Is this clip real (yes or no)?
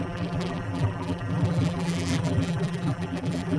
no